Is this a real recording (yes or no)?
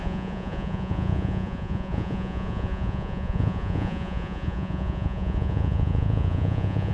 no